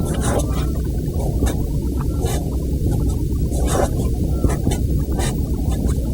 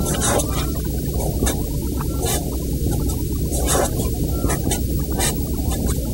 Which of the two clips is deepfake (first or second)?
first